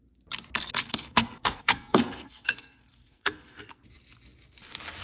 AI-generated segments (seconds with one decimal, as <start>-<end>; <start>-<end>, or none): 0.8-3.8